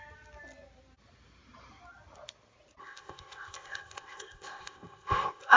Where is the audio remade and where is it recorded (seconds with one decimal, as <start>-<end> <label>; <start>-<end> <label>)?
0.0-2.8 recorded; 2.8-5.6 remade